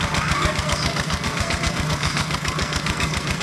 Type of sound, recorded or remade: remade